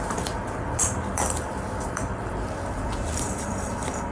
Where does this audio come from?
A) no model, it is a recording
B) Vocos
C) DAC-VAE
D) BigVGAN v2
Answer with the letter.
D